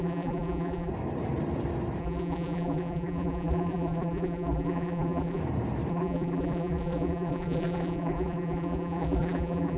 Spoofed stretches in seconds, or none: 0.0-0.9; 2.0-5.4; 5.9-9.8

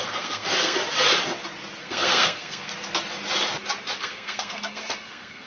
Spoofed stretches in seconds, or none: 0.0-0.8; 1.8-2.7; 4.0-5.5

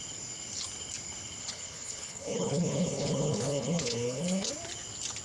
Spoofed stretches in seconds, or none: 1.4-4.5

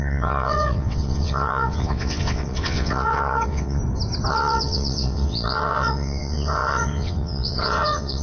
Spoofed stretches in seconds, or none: 0.0-3.8; 4.3-8.2

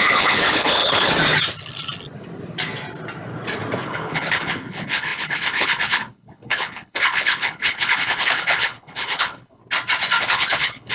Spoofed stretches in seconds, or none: 0.0-1.1; 3.8-9.6; 10.2-10.9

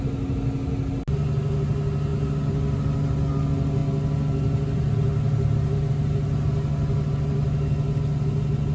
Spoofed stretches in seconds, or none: none